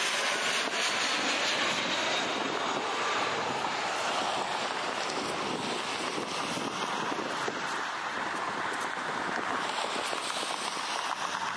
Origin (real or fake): fake